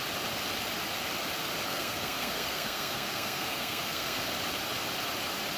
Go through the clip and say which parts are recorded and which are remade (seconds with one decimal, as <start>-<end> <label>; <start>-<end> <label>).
0.0-1.7 recorded; 1.7-4.3 remade; 4.3-5.6 recorded